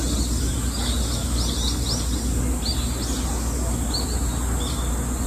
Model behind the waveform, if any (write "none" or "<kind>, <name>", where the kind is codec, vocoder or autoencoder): none